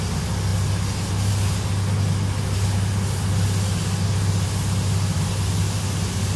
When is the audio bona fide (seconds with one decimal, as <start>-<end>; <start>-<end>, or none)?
0.0-6.4